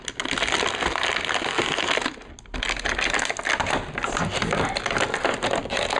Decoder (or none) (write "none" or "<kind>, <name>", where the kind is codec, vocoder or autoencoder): none